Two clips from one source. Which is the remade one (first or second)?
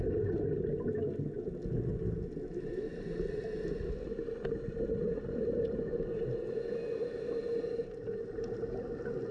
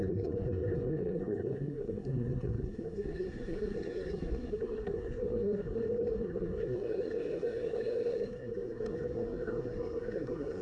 second